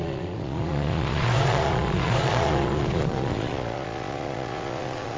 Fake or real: fake